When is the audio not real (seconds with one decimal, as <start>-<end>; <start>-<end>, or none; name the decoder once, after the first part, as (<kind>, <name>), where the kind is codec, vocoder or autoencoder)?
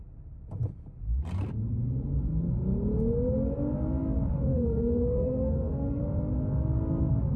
4.5-6.0 (autoencoder, DAC-VAE)